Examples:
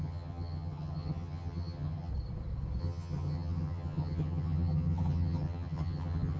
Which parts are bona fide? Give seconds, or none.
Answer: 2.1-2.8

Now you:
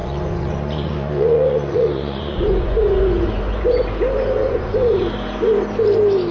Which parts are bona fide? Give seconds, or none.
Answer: 3.8-4.4; 5.0-6.3

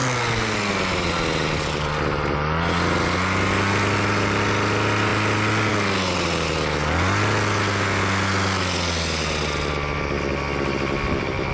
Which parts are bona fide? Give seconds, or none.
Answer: 0.0-11.5

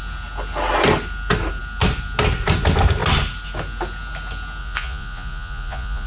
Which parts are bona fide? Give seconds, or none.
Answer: 0.0-4.6

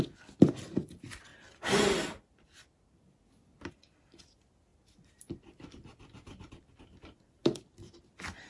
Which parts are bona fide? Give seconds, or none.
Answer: 0.0-8.5